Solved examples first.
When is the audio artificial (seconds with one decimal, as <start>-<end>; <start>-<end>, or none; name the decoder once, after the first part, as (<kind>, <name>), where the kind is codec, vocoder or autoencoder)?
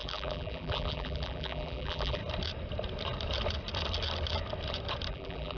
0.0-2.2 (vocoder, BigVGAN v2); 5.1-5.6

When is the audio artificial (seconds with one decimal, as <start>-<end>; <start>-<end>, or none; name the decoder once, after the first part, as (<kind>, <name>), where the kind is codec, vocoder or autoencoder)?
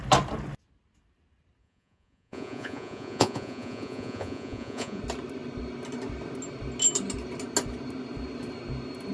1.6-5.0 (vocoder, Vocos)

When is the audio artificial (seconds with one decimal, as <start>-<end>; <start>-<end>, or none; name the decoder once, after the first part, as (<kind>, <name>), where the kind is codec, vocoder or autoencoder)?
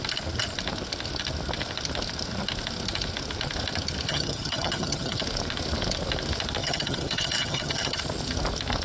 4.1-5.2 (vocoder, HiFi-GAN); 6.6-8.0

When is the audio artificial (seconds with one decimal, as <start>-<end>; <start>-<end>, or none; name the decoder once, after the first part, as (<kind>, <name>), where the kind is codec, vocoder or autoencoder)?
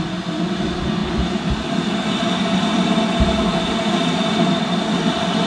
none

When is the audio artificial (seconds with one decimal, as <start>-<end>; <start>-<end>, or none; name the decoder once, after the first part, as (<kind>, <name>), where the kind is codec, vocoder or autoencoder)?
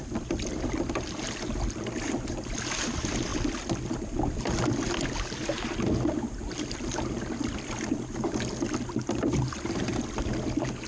none